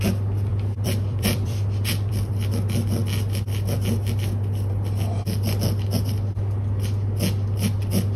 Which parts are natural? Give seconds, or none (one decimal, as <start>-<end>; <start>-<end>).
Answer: 0.0-0.5; 2.3-8.2